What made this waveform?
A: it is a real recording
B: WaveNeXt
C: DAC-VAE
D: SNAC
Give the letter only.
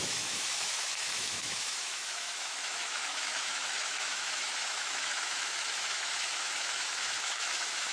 C